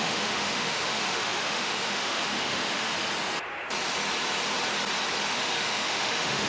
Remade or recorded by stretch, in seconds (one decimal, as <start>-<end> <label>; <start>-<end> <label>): 0.0-2.9 remade; 2.9-5.3 recorded; 5.3-6.5 remade

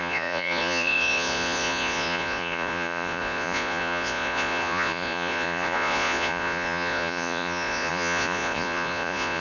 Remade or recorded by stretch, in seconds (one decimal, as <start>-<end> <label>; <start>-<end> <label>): 0.0-9.4 remade

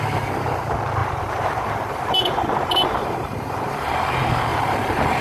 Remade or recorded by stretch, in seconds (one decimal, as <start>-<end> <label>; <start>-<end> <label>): 0.0-1.0 recorded; 1.0-4.1 remade; 4.1-4.5 recorded; 4.5-5.2 remade

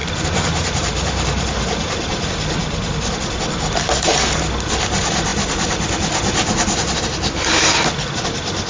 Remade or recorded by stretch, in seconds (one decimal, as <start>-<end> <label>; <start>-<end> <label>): 0.0-2.3 remade; 2.3-8.7 recorded

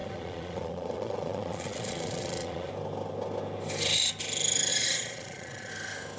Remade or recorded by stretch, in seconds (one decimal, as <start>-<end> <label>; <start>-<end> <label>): 0.0-2.7 remade; 2.7-4.7 recorded; 4.7-5.7 remade; 5.7-6.2 recorded